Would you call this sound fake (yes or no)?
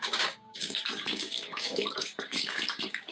yes